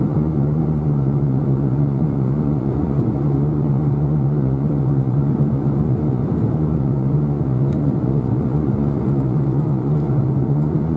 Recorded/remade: remade